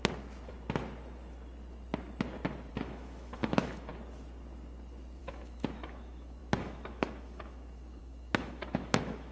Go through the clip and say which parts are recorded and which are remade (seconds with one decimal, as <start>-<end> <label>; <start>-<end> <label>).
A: 0.0-2.7 recorded; 2.7-3.9 remade; 3.9-5.2 recorded; 5.2-9.3 remade